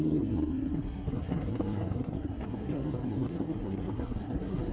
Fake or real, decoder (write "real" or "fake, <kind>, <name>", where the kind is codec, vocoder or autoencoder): fake, codec, SNAC